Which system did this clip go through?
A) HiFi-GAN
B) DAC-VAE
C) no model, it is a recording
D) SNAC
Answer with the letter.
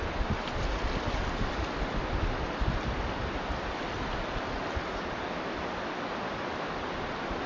C